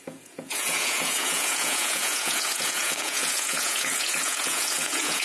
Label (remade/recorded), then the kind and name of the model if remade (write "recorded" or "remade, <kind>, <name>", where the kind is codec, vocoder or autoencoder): remade, vocoder, Vocos